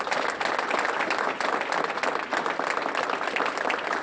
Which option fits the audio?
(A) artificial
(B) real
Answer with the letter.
B